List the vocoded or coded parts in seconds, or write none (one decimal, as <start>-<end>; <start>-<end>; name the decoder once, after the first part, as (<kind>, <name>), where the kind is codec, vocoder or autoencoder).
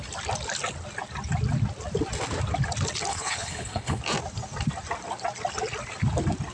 3.1-4.0 (codec, HILCodec)